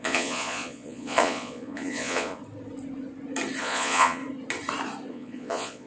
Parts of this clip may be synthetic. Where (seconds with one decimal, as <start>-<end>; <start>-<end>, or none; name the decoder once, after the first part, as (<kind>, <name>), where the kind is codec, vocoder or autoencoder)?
0.0-2.4 (vocoder, Vocos); 3.6-4.2; 5.1-5.9